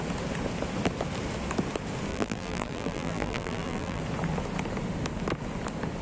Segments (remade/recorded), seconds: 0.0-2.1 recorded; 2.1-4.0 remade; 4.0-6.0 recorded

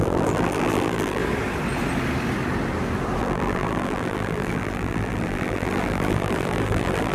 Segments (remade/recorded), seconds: 0.0-1.2 remade; 1.2-3.2 recorded; 3.2-7.1 remade

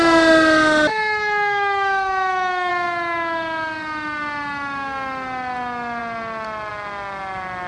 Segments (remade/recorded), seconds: 0.0-0.9 recorded; 0.9-2.7 remade; 2.7-7.7 recorded

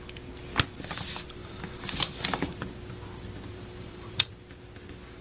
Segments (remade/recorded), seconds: 0.0-1.4 recorded; 1.4-2.5 remade; 2.5-3.5 recorded; 3.5-4.3 remade; 4.3-5.2 recorded